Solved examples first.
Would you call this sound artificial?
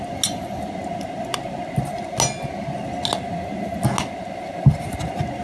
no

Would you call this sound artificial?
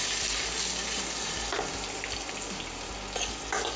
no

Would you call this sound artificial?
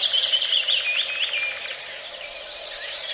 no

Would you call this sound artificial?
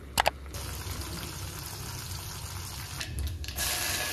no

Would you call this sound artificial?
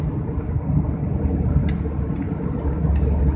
no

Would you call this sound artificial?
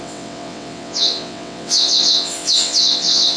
yes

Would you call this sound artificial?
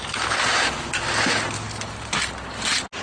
no